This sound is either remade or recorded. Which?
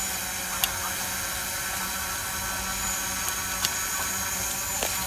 recorded